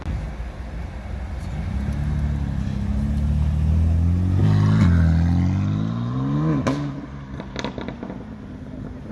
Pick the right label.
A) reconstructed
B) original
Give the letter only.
B